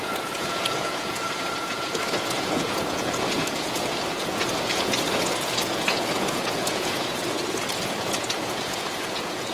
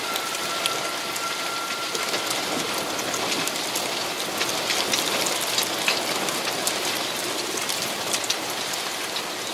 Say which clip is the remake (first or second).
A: first